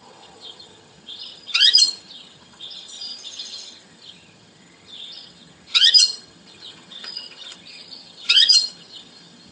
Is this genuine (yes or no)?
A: no